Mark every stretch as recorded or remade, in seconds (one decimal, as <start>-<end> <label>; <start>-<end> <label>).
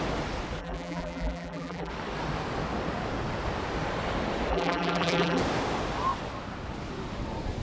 0.0-0.6 recorded; 0.6-1.9 remade; 1.9-4.5 recorded; 4.5-5.4 remade; 5.4-7.6 recorded